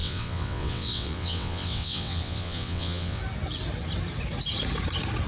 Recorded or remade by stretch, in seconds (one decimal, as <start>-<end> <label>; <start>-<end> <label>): 0.0-3.2 remade; 3.2-5.3 recorded